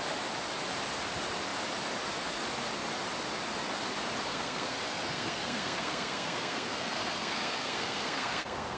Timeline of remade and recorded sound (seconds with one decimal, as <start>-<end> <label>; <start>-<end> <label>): 0.0-4.3 recorded; 4.3-8.8 remade